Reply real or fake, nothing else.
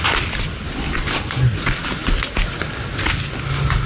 real